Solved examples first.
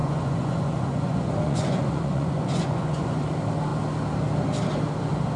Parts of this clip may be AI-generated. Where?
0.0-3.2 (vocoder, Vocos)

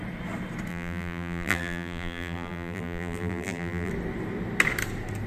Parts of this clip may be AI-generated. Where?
0.7-3.9 (vocoder, BigVGAN v2)

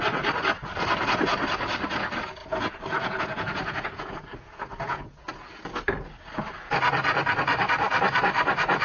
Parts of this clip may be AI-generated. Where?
2.4-5.6 (vocoder, Vocos)

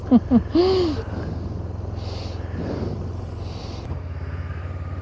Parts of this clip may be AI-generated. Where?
4.0-4.6 (codec, SNAC)

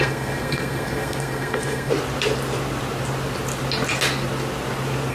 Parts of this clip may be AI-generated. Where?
0.0-1.9 (codec, SNAC)

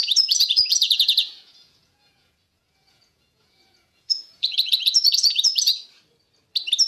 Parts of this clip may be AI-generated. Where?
0.0-5.7 (vocoder, Vocos)

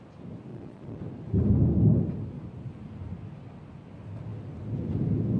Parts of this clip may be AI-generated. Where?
0.5-1.0 (vocoder, Vocos)